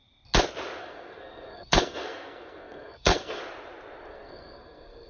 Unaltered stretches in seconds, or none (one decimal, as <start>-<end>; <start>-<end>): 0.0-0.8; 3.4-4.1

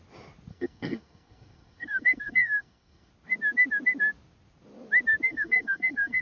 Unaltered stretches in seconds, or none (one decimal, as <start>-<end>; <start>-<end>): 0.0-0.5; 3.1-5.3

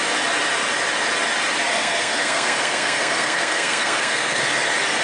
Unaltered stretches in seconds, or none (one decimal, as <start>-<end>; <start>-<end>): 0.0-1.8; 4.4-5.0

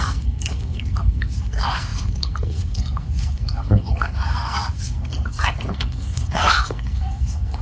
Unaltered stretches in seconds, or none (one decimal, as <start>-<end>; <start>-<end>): none